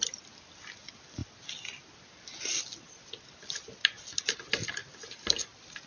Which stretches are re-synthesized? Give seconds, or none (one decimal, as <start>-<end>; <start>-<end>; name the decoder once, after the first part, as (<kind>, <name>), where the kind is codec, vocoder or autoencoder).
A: none

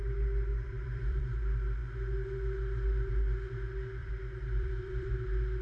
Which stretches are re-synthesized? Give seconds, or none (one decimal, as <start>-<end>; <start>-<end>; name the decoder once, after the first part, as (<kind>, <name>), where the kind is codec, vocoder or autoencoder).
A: 0.5-1.2 (vocoder, BigVGAN v2); 4.0-5.1

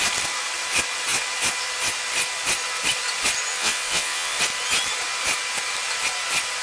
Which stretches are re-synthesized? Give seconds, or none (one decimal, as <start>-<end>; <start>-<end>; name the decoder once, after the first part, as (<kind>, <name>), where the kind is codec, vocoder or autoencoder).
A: 3.5-4.4 (vocoder, WaveNeXt)